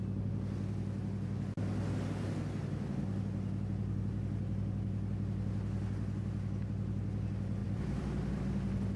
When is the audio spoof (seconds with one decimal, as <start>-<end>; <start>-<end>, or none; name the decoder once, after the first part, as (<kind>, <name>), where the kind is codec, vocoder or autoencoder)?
7.6-8.4 (vocoder, BigVGAN v2)